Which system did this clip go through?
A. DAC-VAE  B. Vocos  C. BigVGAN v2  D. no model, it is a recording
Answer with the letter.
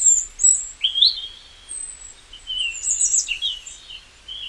D